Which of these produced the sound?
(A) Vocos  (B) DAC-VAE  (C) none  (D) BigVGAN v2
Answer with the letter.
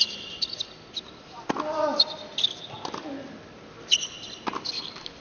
C